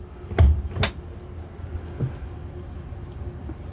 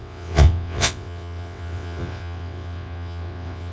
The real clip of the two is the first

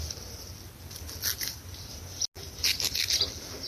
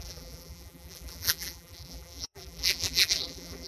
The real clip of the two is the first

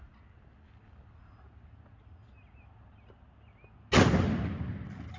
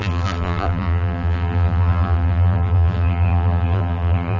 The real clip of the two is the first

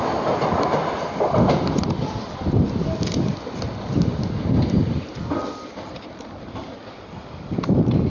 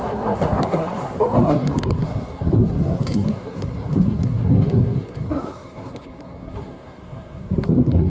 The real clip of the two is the first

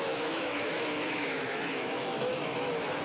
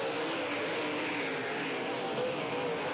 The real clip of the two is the second